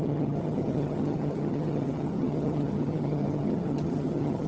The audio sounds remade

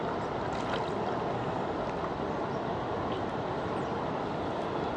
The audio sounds recorded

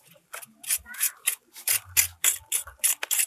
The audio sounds remade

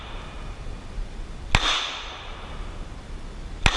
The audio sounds recorded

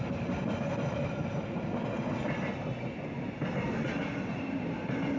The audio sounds recorded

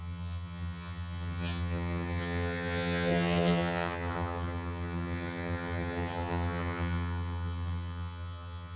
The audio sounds remade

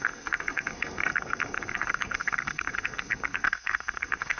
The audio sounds remade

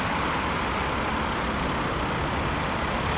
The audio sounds recorded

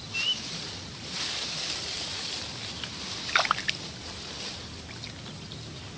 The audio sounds recorded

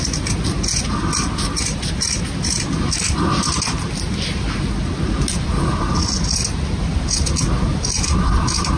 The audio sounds recorded